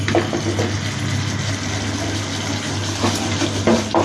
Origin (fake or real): real